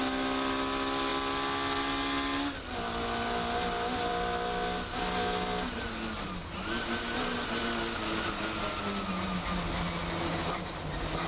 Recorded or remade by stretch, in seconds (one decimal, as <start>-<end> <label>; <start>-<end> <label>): 0.0-11.3 recorded